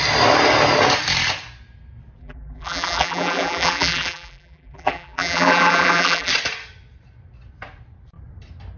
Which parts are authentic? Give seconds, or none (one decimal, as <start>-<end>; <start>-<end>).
0.0-2.2; 6.3-8.8